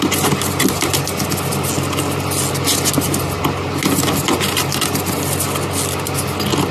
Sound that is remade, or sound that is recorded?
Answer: recorded